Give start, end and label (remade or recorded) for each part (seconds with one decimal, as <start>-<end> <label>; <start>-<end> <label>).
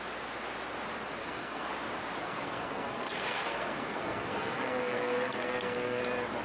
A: 0.0-1.2 recorded; 1.2-1.7 remade; 1.7-2.2 recorded; 2.2-6.0 remade; 6.0-6.4 recorded